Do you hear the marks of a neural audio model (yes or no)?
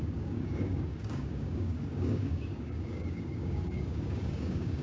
yes